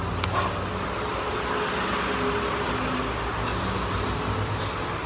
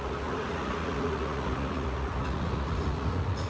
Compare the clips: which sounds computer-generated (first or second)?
second